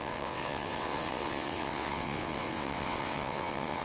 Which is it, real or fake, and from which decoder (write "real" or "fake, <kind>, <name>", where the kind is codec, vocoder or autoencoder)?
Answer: fake, vocoder, WaveNeXt